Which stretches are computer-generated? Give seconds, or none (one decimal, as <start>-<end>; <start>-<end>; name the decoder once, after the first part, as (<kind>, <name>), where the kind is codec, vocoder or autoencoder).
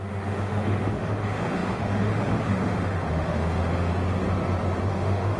0.0-3.9 (autoencoder, DAC-VAE); 4.9-5.4